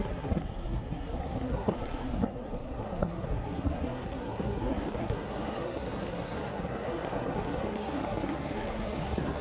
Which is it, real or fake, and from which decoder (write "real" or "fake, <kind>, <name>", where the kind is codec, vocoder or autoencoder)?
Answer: fake, codec, SNAC